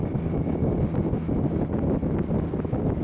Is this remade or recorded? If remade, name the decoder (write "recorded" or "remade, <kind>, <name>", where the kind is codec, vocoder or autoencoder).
recorded